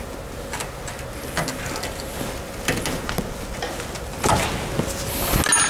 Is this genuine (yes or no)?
yes